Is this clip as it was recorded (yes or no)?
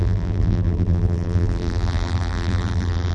no